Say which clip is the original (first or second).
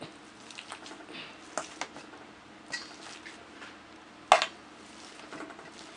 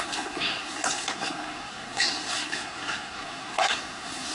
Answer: first